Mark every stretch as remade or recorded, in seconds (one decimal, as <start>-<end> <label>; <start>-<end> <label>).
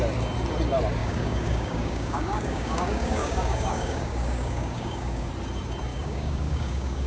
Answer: 0.0-1.0 recorded; 1.0-5.3 remade; 5.3-5.9 recorded; 5.9-7.1 remade